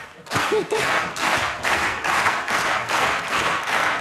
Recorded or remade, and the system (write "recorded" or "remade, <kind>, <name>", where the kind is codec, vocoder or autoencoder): remade, codec, SNAC